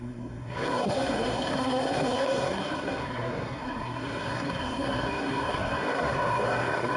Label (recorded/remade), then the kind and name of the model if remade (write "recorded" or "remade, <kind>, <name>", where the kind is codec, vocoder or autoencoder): remade, codec, SNAC